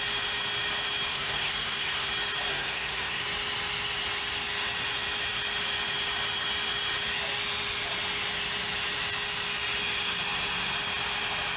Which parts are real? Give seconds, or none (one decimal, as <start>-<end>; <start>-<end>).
0.0-1.1; 2.1-2.5; 3.2-11.6